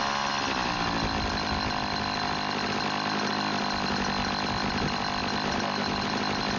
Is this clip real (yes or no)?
yes